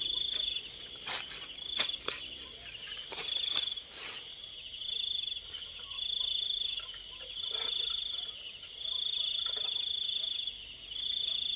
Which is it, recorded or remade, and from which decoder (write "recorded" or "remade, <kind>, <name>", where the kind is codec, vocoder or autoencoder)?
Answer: recorded